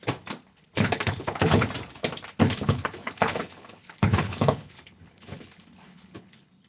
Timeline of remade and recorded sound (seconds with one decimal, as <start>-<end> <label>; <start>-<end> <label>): 0.0-0.5 recorded; 0.5-1.7 remade; 1.7-2.4 recorded; 2.4-6.7 remade